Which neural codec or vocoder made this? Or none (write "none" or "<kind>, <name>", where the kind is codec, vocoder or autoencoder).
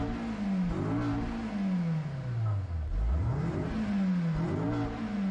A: none